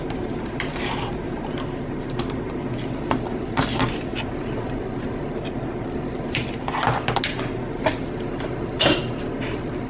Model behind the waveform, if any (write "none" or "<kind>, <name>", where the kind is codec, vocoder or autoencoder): none